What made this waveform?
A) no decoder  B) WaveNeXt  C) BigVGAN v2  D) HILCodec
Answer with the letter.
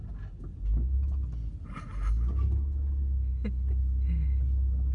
A